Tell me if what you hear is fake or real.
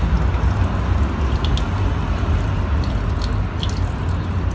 real